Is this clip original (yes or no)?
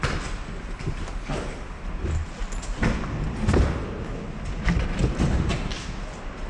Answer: yes